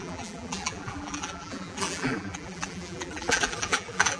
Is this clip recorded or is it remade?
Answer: remade